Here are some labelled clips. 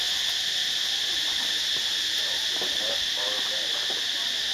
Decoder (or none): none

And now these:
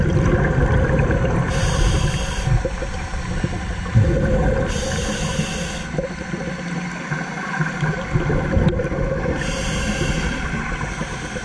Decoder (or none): none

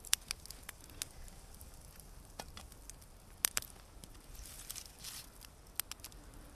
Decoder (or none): none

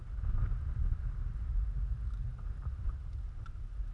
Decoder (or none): none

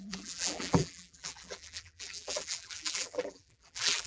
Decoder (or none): vocoder, BigVGAN v2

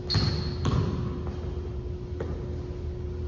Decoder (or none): none